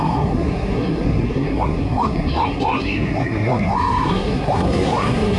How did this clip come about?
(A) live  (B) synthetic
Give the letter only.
B